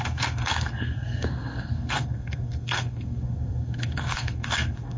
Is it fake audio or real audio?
fake